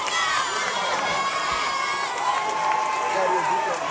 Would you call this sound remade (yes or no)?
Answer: yes